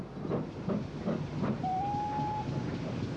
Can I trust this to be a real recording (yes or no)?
yes